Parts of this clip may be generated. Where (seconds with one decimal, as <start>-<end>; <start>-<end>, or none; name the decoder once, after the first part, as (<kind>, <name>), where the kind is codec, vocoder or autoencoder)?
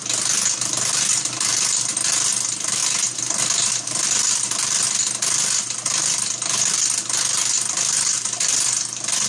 0.0-2.8 (vocoder, BigVGAN v2); 3.7-9.3